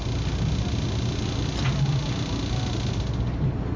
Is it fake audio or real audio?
real